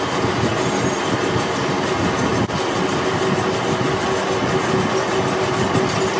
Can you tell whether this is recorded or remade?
recorded